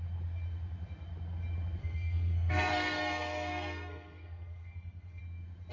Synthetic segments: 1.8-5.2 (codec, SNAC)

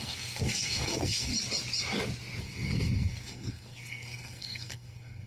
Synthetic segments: 0.0-1.3 (codec, SNAC); 2.4-5.3

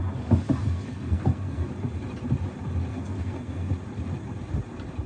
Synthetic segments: 0.6-1.7 (codec, SNAC); 2.9-3.7

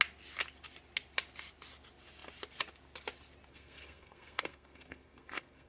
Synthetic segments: 3.5-5.7 (codec, SNAC)

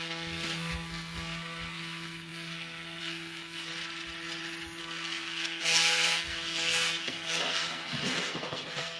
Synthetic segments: 0.0-3.7 (codec, SNAC); 4.8-9.0